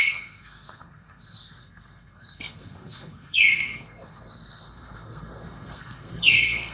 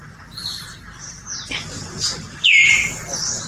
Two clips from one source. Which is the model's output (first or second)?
first